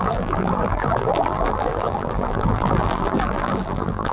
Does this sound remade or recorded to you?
remade